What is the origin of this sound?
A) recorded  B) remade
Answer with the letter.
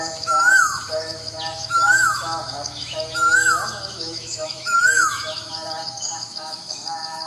B